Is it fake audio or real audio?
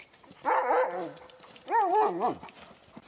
real